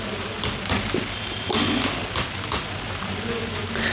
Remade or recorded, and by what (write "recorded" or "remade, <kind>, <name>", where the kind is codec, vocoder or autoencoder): recorded